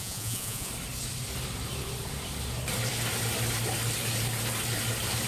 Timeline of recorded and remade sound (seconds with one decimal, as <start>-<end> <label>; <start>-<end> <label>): 0.0-0.7 remade; 0.7-5.3 recorded